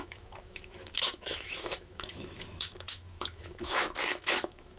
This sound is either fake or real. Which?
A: fake